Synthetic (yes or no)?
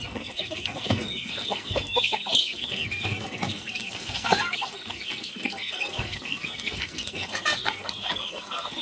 yes